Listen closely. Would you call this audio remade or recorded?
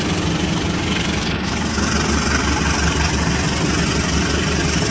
recorded